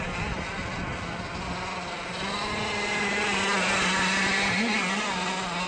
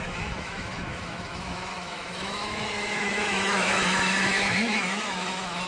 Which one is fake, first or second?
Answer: second